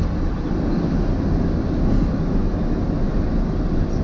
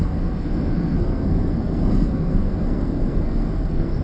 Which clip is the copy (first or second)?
second